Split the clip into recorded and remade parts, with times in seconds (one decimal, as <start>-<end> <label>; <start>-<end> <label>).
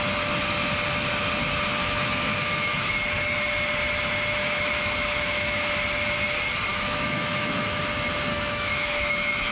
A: 0.0-1.8 recorded; 1.8-2.9 remade; 2.9-4.4 recorded; 4.4-5.7 remade; 5.7-6.7 recorded; 6.7-7.8 remade; 7.8-8.3 recorded; 8.3-9.5 remade